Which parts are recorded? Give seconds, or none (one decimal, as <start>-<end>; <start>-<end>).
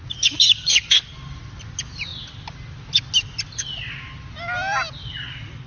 0.0-5.7